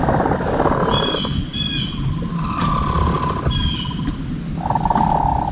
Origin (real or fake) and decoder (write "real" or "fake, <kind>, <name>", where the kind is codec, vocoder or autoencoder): real